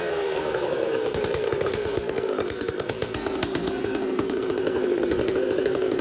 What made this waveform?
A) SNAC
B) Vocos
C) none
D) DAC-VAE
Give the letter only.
A